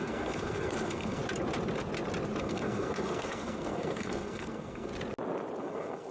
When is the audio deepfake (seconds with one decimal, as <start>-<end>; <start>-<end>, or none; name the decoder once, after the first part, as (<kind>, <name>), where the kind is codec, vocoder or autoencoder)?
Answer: 0.0-1.2 (codec, SNAC); 2.4-4.9; 5.6-6.1